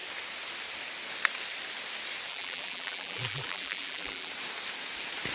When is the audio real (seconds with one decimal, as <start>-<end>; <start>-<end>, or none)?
0.0-2.3; 4.3-5.3